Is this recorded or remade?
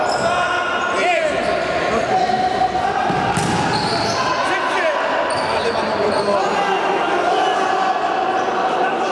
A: recorded